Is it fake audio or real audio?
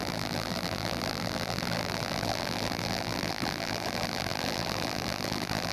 fake